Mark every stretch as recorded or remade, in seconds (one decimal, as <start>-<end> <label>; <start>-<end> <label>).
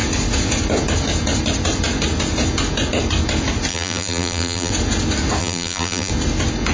0.0-3.7 recorded; 3.7-4.7 remade; 4.7-5.4 recorded; 5.4-6.1 remade; 6.1-6.7 recorded